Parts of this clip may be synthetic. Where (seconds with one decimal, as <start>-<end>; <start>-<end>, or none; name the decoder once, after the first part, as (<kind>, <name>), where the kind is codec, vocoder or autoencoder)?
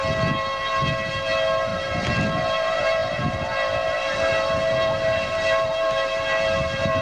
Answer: none